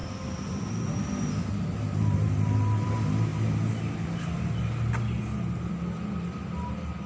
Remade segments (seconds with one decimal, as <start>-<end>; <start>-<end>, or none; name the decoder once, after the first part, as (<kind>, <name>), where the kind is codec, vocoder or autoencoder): none